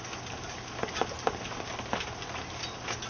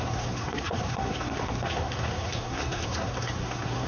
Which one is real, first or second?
first